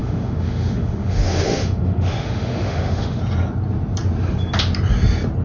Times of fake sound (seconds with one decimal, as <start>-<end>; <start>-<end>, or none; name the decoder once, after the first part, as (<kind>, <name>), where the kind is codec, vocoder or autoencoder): 0.0-3.2 (autoencoder, DAC-VAE)